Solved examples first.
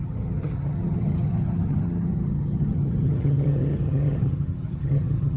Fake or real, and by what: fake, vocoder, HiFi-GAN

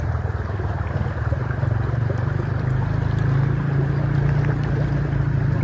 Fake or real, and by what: real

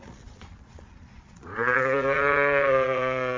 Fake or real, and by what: fake, vocoder, Vocos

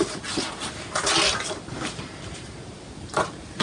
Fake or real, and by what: real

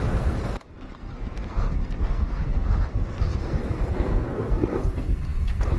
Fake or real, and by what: fake, codec, SNAC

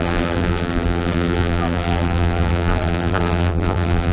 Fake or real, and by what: fake, vocoder, BigVGAN v2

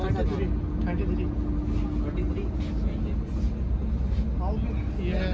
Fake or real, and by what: real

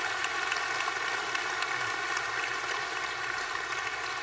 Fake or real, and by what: real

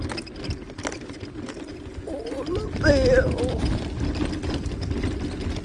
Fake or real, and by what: real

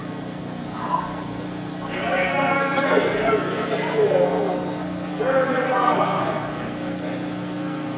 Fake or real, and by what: fake, codec, SNAC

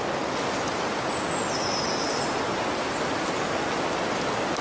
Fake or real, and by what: real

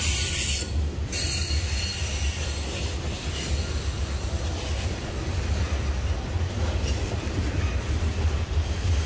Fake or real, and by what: real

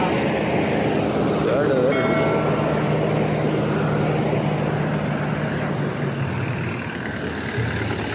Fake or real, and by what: real